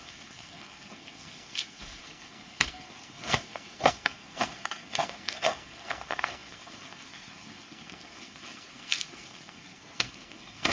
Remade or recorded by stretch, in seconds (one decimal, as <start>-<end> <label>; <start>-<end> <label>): 0.0-10.7 remade